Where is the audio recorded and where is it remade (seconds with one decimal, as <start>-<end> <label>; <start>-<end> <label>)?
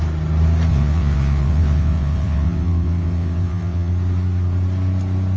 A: 0.0-0.7 recorded; 0.7-3.9 remade; 3.9-5.4 recorded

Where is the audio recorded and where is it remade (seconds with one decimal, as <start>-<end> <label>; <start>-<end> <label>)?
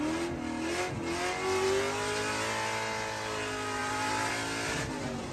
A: 0.0-5.3 recorded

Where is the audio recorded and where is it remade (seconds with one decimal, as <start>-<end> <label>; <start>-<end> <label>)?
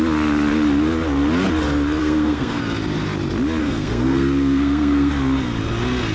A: 0.0-2.0 recorded; 2.0-2.6 remade; 2.6-3.6 recorded; 3.6-5.1 remade; 5.1-6.1 recorded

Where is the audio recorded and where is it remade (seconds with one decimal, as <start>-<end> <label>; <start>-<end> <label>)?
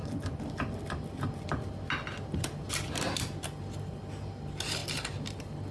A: 0.0-5.7 recorded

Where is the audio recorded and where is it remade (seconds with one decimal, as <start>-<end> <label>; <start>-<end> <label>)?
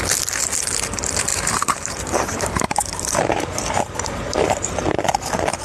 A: 0.0-1.3 recorded; 1.3-4.7 remade; 4.7-5.6 recorded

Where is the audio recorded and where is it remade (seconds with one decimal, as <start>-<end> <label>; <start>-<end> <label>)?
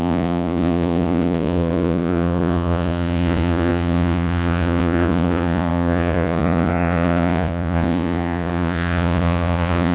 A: 0.0-9.9 remade